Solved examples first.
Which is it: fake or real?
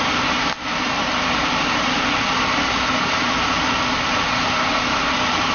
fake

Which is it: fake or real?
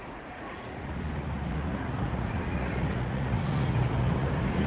fake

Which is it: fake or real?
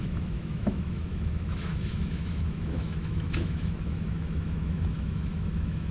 fake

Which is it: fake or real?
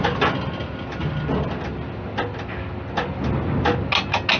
real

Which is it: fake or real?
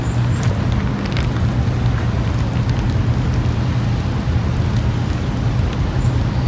real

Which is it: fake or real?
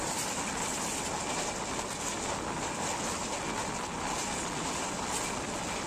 real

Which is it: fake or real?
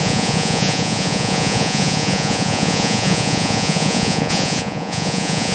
fake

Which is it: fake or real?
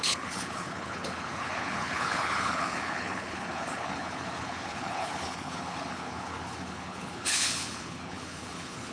fake